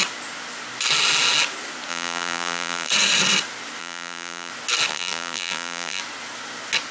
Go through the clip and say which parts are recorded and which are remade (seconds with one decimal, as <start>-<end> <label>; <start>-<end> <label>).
0.0-1.9 recorded; 1.9-2.9 remade; 2.9-3.8 recorded; 3.8-4.5 remade; 4.5-4.9 recorded; 4.9-6.0 remade; 6.0-6.9 recorded

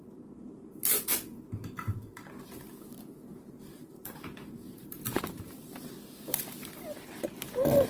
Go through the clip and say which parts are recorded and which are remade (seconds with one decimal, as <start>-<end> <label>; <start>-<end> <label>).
0.0-1.9 recorded; 1.9-2.9 remade; 2.9-3.3 recorded; 3.3-5.9 remade; 5.9-7.9 recorded

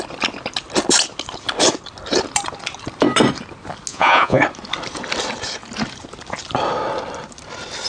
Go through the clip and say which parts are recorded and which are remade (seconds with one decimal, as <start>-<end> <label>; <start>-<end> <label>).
0.0-3.9 recorded; 3.9-4.4 remade; 4.4-7.9 recorded

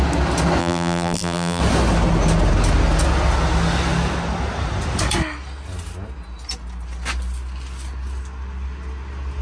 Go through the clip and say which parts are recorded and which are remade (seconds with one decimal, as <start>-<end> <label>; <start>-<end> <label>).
0.0-0.6 recorded; 0.6-1.6 remade; 1.6-9.4 recorded

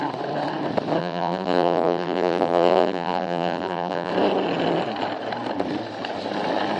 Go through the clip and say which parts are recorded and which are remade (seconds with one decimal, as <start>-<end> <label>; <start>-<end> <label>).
0.0-1.0 recorded; 1.0-4.1 remade; 4.1-6.8 recorded

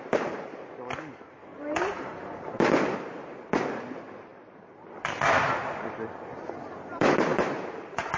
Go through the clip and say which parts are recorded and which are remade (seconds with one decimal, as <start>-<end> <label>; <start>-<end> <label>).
0.0-1.5 recorded; 1.5-3.6 remade; 3.6-7.3 recorded; 7.3-8.2 remade